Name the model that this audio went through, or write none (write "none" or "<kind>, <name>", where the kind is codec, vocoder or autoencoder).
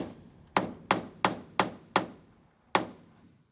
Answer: none